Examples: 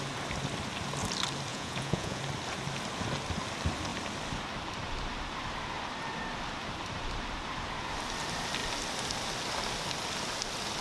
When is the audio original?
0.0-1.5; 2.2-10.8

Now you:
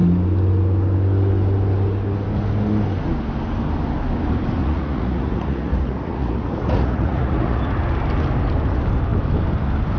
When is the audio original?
0.0-4.6; 7.6-10.0

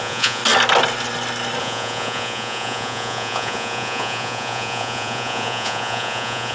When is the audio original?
0.4-1.6

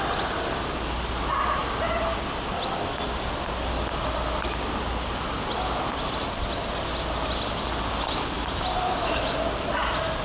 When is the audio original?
0.0-10.2

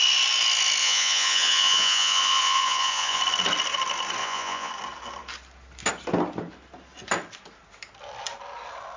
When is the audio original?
0.0-0.8; 3.2-4.2; 4.7-9.0

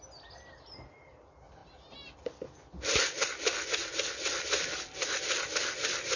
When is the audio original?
0.0-6.2